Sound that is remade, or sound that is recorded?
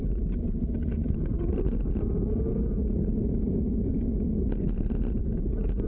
recorded